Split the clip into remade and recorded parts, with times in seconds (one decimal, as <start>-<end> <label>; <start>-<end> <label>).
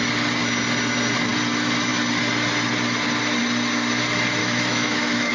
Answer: 0.0-4.4 recorded; 4.4-5.3 remade